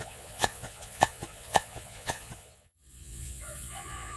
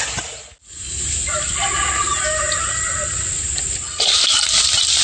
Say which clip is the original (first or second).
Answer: second